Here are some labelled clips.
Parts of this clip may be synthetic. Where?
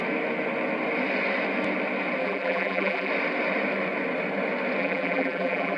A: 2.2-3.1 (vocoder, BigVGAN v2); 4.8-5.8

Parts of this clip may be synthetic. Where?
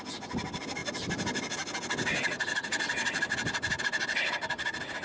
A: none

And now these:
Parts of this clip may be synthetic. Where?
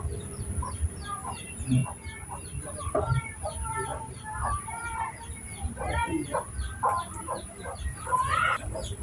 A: 0.0-1.8 (vocoder, BigVGAN v2); 2.6-9.0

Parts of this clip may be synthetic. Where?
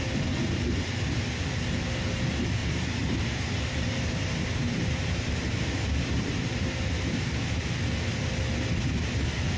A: 2.6-7.6 (vocoder, BigVGAN v2)